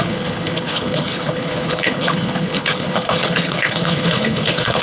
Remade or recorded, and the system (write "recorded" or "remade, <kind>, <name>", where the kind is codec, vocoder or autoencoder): remade, codec, HILCodec